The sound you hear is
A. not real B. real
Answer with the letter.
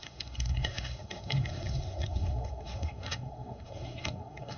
A